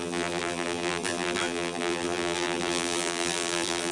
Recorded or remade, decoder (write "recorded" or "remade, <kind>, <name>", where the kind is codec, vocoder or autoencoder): remade, vocoder, BigVGAN v2